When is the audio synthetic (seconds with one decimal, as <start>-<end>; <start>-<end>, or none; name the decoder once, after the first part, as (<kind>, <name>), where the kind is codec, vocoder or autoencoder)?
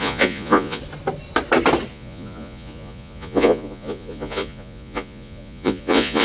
0.0-0.8 (vocoder, Vocos); 1.9-6.2